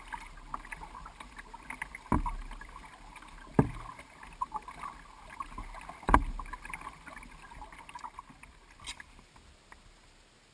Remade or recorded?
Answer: recorded